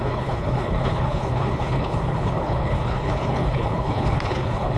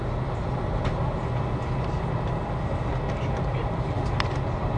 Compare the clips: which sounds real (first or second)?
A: second